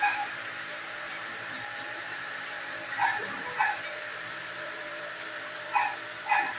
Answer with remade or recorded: remade